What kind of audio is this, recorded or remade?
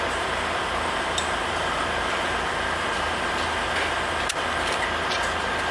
recorded